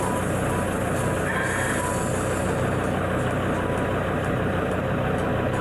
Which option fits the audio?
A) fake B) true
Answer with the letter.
B